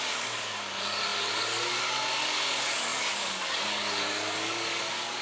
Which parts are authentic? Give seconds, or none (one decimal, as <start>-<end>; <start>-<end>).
none